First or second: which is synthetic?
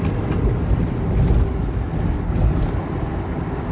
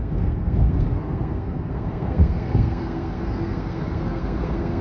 second